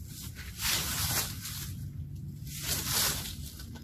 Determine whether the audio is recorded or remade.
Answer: recorded